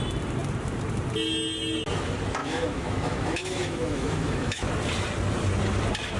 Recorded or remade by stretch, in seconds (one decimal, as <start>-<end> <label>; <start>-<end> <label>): 0.0-2.4 recorded; 2.4-4.7 remade; 4.7-6.2 recorded